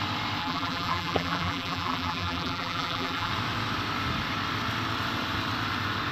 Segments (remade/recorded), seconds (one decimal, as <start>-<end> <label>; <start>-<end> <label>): 0.0-0.4 recorded; 0.4-3.3 remade; 3.3-6.1 recorded